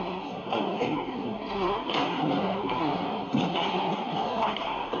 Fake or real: fake